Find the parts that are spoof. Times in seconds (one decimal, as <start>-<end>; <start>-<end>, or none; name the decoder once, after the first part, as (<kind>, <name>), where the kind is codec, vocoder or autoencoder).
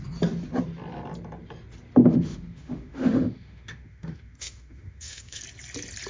2.0-5.4 (autoencoder, DAC-VAE)